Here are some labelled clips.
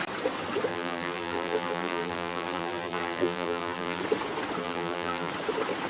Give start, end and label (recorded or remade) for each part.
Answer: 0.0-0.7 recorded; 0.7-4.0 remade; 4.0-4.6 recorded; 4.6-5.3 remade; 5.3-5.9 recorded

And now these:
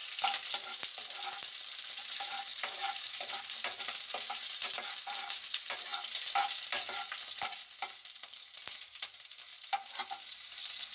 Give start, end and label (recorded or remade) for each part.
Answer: 0.0-1.9 recorded; 1.9-5.9 remade; 5.9-7.8 recorded; 7.8-9.5 remade; 9.5-10.3 recorded; 10.3-10.9 remade

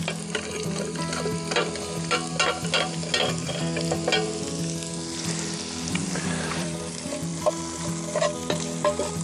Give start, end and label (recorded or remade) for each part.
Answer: 0.0-6.0 recorded; 6.0-6.8 remade; 6.8-9.2 recorded

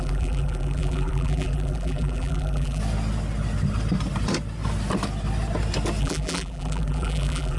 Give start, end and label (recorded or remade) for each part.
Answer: 0.0-2.8 remade; 2.8-6.0 recorded; 6.0-7.6 remade

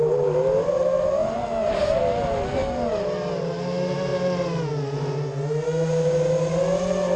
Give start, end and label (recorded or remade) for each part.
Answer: 0.0-7.2 recorded

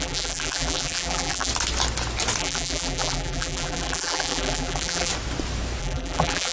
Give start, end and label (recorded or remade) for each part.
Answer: 0.0-1.5 remade; 1.5-2.4 recorded; 2.4-5.1 remade; 5.1-5.8 recorded; 5.8-6.5 remade

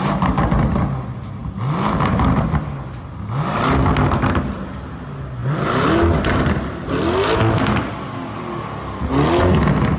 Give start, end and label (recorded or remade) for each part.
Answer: 0.0-10.0 recorded